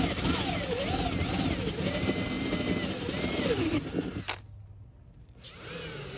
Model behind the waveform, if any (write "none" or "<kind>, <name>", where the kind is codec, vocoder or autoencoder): none